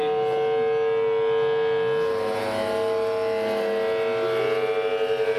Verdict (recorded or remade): recorded